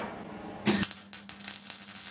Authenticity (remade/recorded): recorded